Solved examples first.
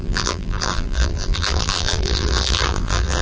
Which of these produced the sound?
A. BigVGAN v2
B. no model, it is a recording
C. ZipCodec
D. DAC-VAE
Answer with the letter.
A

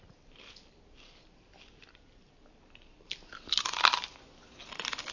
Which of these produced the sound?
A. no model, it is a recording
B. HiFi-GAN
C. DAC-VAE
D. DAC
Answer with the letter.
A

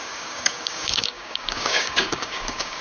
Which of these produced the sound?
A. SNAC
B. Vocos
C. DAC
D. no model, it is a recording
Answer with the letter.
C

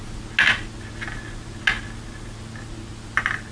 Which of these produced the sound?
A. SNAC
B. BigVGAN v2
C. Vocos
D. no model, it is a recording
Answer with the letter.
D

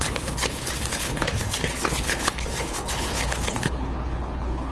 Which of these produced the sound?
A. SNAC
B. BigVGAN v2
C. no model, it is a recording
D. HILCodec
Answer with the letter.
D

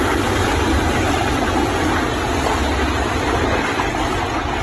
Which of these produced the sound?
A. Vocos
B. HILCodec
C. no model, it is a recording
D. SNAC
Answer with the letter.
C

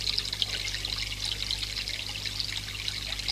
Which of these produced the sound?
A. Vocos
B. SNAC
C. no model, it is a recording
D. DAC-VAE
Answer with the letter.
C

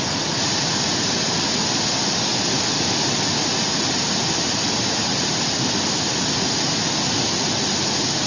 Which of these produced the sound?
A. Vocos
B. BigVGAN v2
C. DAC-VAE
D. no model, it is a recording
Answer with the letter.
D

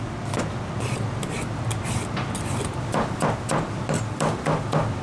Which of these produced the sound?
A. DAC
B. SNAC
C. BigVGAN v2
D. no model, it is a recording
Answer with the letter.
D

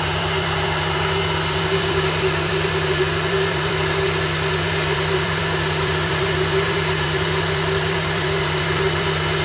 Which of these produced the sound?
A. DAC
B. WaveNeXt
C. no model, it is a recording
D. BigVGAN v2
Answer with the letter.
D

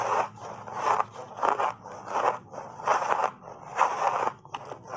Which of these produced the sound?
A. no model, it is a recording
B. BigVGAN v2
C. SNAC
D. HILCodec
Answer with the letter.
A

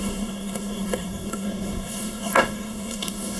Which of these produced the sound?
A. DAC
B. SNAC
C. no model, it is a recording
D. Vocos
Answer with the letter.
B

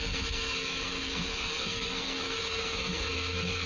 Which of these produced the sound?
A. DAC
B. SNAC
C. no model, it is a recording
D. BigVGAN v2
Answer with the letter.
B